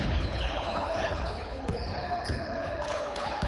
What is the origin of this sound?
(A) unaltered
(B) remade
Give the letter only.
B